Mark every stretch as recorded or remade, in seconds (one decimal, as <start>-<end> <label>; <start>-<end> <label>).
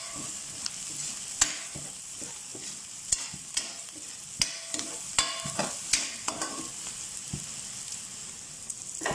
0.0-9.1 recorded